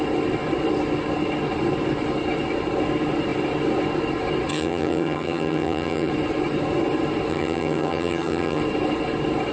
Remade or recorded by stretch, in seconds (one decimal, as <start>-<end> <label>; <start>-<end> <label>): 0.0-4.5 recorded; 4.5-6.1 remade; 6.1-7.3 recorded; 7.3-8.6 remade; 8.6-9.5 recorded